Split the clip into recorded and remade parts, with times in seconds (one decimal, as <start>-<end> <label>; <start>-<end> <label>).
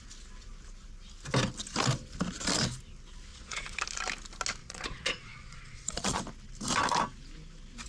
0.0-3.3 recorded; 3.3-3.8 remade; 3.8-4.6 recorded; 4.6-6.2 remade; 6.2-7.9 recorded